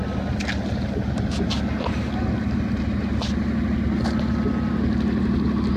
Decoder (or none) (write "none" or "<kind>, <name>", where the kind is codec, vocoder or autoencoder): none